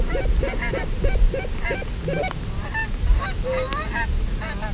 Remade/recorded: recorded